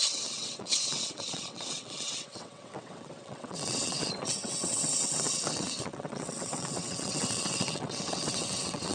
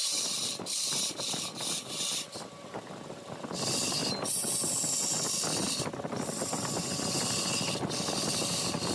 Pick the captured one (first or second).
second